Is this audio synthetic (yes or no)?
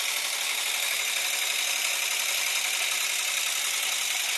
no